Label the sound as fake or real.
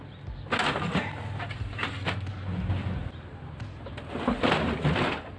real